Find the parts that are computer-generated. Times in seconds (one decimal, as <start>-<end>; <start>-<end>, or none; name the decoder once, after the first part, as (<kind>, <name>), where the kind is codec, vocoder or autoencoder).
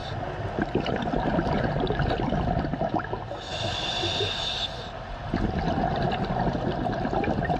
none